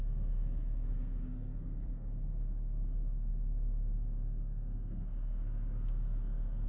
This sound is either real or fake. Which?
fake